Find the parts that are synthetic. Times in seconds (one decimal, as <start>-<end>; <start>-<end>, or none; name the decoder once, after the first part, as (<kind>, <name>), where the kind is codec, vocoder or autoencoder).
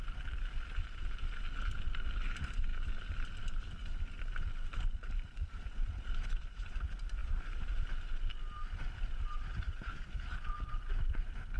4.7-6.7 (vocoder, BigVGAN v2); 7.2-7.9